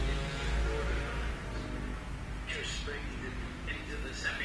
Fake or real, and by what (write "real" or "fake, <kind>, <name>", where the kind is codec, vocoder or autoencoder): real